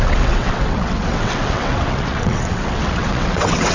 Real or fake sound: fake